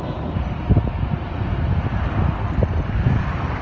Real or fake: real